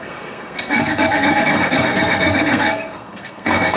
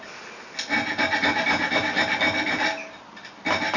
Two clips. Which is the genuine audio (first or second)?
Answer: second